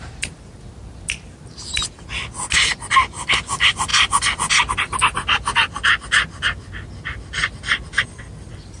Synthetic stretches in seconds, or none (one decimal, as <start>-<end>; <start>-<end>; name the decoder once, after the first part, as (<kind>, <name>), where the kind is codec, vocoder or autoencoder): none